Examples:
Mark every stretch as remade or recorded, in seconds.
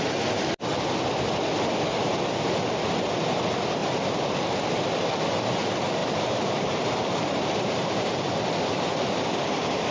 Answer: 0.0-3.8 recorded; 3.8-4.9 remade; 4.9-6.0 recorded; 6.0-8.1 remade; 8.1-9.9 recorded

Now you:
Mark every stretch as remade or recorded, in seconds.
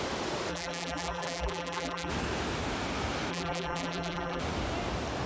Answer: 0.0-0.5 recorded; 0.5-2.1 remade; 2.1-3.3 recorded; 3.3-4.4 remade; 4.4-5.3 recorded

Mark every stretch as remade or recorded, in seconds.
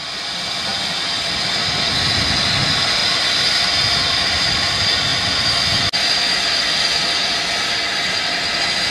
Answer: 0.0-8.9 recorded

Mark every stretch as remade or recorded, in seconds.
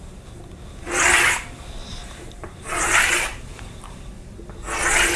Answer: 0.0-1.8 recorded; 1.8-4.1 remade; 4.1-5.2 recorded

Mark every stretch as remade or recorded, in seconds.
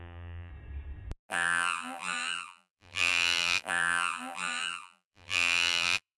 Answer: 0.0-0.5 remade; 0.5-1.3 recorded; 1.3-6.2 remade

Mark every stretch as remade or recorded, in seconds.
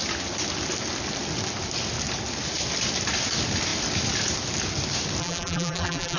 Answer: 0.0-5.2 recorded; 5.2-6.2 remade